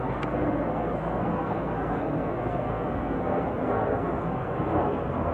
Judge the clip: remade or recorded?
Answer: remade